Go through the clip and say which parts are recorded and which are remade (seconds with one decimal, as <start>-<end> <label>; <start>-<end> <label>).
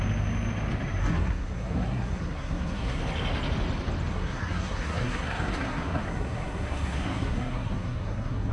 0.0-1.0 recorded; 1.0-3.0 remade; 3.0-4.1 recorded; 4.1-8.5 remade